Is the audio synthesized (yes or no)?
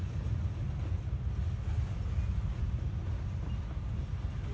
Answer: no